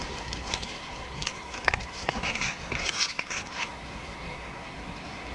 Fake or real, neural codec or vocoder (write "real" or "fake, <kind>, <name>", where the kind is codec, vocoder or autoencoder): fake, codec, SNAC